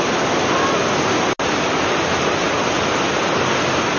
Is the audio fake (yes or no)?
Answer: no